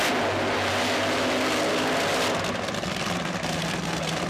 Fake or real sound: real